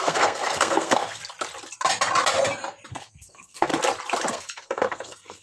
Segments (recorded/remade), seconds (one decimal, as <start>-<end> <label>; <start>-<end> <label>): 0.0-1.2 remade; 1.2-2.9 recorded; 2.9-3.7 remade; 3.7-4.3 recorded; 4.3-5.4 remade